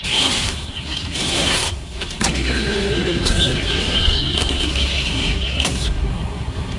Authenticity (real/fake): fake